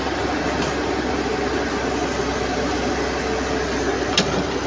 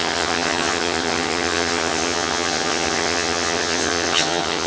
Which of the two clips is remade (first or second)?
second